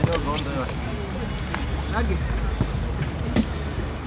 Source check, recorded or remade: recorded